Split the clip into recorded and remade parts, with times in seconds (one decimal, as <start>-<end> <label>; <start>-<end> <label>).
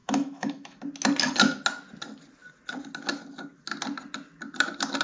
0.0-0.8 remade; 0.8-5.0 recorded